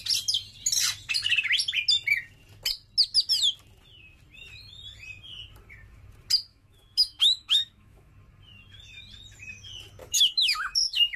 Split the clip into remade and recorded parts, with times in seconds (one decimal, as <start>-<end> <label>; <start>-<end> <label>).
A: 0.0-6.5 recorded; 6.5-8.1 remade; 8.1-10.0 recorded; 10.0-11.2 remade